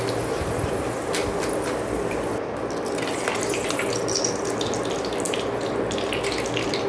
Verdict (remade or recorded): recorded